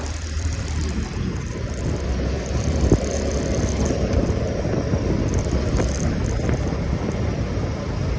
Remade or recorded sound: remade